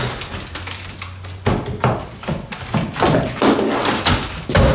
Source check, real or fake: real